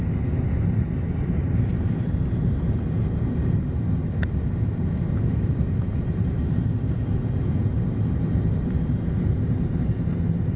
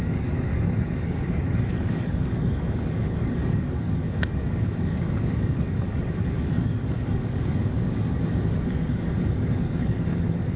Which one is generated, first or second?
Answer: second